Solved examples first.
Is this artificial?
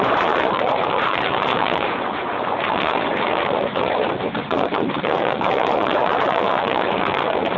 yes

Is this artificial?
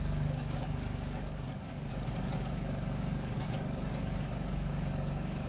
yes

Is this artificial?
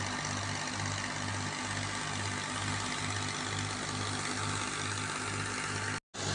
no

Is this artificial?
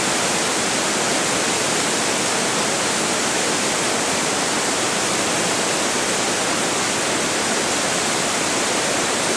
no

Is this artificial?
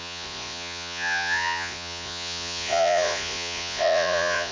yes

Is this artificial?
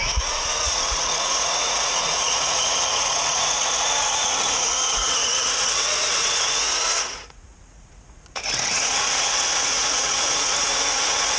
yes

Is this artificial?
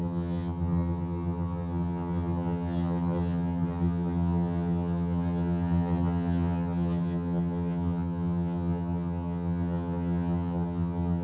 yes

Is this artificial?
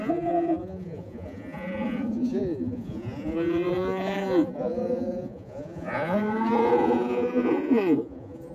yes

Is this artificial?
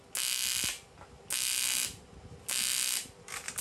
no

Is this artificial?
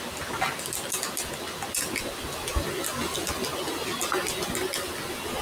no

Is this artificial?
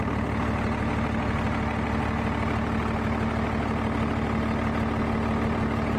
no